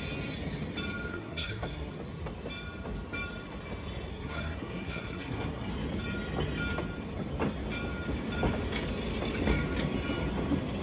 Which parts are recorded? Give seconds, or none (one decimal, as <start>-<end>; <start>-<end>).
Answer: 0.0-1.1; 1.9-4.1; 5.7-10.8